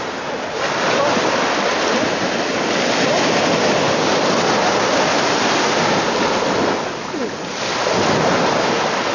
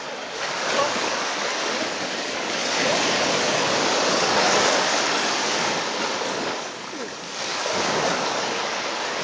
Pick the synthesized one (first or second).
second